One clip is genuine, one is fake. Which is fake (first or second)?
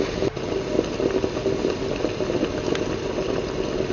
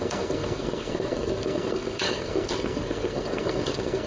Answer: second